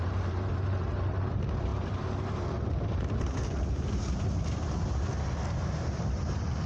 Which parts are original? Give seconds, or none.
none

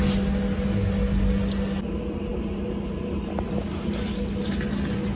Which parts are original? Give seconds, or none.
0.0-5.2